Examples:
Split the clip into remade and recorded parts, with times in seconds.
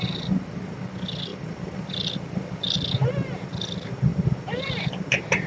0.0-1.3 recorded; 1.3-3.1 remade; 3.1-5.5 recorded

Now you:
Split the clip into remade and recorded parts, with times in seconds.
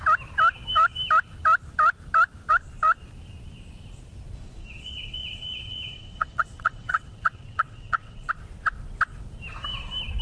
0.0-4.6 recorded; 4.6-8.3 remade; 8.3-10.2 recorded